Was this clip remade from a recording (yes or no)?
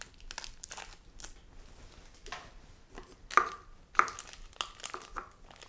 no